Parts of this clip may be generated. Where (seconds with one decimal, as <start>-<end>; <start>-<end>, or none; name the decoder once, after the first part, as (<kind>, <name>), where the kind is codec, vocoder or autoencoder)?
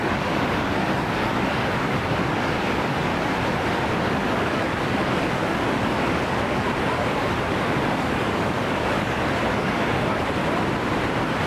0.0-3.1 (codec, DAC); 4.0-10.4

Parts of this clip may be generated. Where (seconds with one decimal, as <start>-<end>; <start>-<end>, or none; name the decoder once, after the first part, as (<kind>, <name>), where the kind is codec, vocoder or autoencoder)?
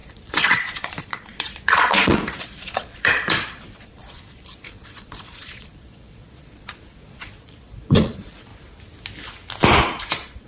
0.0-8.5 (vocoder, Vocos); 9.8-10.5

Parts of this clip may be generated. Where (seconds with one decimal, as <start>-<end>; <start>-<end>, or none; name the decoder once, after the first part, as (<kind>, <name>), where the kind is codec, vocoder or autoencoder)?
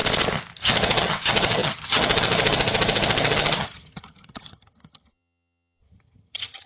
0.6-6.7 (vocoder, HiFi-GAN)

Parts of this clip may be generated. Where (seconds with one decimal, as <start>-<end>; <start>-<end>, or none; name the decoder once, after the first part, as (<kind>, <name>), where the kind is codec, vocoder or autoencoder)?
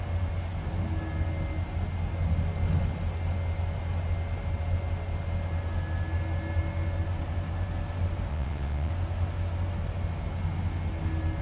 8.3-8.9 (vocoder, Vocos)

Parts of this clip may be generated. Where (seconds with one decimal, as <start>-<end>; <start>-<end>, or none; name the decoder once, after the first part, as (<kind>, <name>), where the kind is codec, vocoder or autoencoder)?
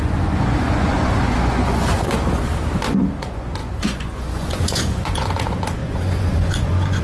0.0-2.5 (vocoder, Vocos); 3.2-7.0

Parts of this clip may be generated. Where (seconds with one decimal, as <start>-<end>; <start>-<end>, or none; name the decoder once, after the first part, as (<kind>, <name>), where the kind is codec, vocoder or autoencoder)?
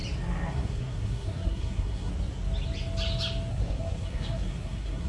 0.5-2.1 (codec, SNAC); 3.5-5.1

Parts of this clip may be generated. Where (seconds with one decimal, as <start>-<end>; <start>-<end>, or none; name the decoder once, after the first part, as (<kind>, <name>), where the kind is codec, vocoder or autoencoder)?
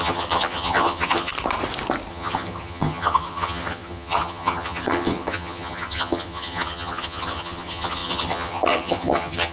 0.0-1.3 (vocoder, HiFi-GAN); 2.1-9.5